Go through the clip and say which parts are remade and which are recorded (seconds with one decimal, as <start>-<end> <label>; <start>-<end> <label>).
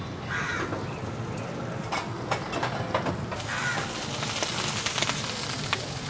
0.0-6.1 recorded